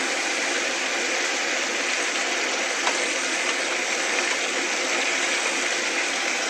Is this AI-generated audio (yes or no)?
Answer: no